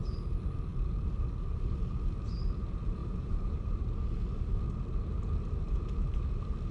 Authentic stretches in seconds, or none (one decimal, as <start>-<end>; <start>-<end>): 0.0-3.0; 3.7-6.7